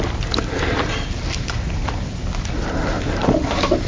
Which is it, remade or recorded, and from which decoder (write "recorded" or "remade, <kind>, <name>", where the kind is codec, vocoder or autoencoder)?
remade, vocoder, BigVGAN v2